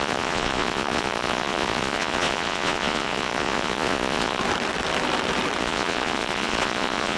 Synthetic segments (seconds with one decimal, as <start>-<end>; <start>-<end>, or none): 0.0-4.4; 5.6-7.2